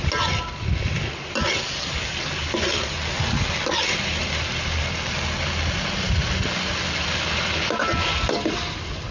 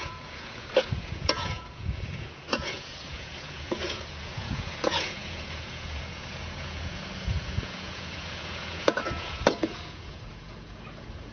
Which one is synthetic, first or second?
second